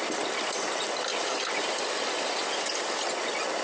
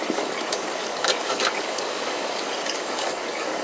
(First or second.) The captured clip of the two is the first